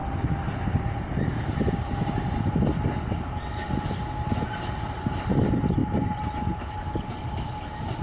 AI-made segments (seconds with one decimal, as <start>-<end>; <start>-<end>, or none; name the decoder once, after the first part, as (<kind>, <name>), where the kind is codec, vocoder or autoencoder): 5.8-6.4 (vocoder, BigVGAN v2)